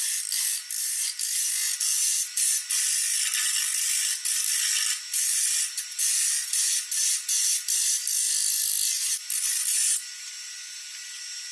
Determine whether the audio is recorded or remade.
recorded